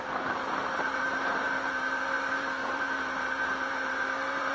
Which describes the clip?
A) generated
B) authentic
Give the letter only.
A